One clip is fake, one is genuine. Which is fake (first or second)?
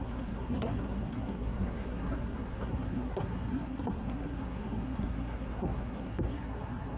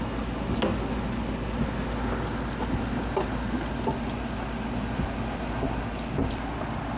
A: first